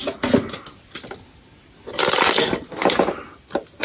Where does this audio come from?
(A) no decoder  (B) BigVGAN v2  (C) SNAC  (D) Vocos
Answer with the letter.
A